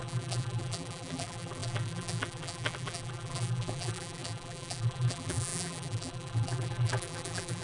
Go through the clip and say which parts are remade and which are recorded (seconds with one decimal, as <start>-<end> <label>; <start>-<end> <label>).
0.0-7.6 remade